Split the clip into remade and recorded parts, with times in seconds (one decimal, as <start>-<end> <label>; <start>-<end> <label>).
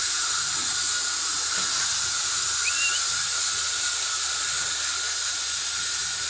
0.0-6.3 recorded